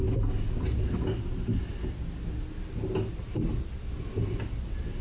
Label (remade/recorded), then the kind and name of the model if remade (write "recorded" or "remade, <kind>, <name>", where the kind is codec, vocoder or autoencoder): recorded